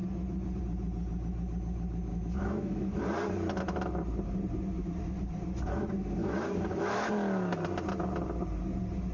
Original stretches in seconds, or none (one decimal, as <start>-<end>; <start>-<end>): 0.0-2.1; 3.0-6.2; 7.1-9.1